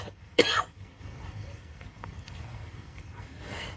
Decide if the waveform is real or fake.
fake